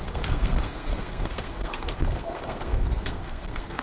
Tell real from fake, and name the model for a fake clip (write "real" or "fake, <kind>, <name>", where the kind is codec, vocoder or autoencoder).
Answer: fake, codec, SNAC